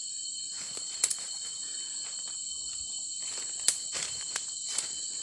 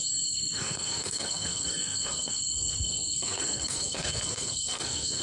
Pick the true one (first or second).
first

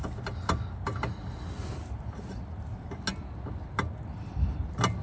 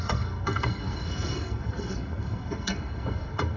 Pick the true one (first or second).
first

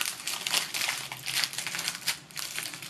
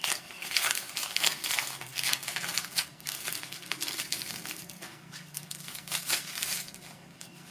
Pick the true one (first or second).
first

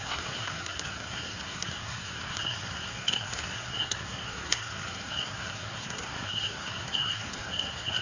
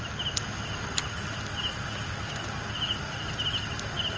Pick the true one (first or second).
second